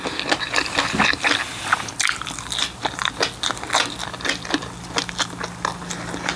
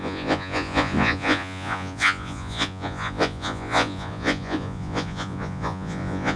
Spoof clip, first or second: second